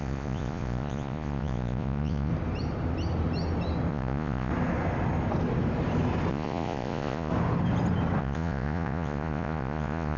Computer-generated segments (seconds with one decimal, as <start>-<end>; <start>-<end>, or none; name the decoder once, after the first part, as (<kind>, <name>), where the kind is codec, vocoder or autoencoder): 0.0-2.3 (vocoder, Vocos); 3.9-4.5; 6.3-7.3; 8.2-10.2